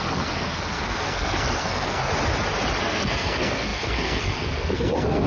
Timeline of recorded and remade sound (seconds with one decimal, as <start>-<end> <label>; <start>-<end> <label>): 0.0-2.1 remade; 2.1-2.8 recorded; 2.8-5.3 remade